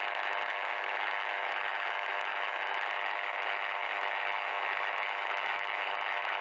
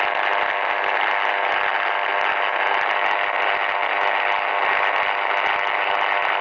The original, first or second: second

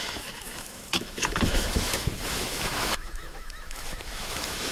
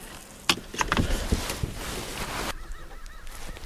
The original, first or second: second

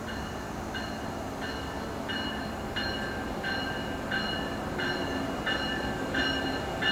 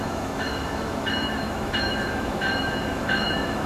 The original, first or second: first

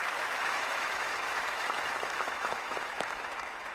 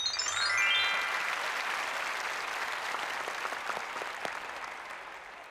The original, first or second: second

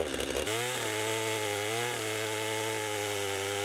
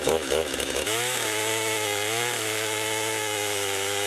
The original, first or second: first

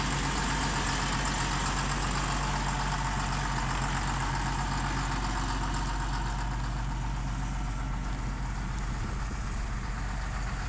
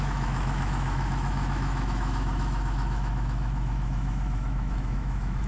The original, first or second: first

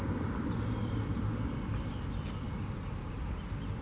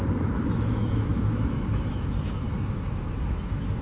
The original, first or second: first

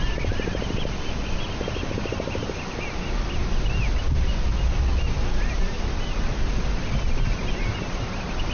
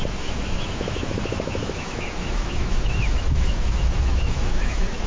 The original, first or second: first